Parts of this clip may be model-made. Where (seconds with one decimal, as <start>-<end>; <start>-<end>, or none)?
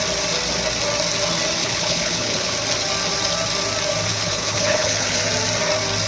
1.6-2.5; 4.1-5.2